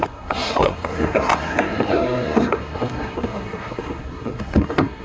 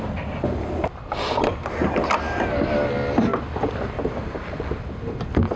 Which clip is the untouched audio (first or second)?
second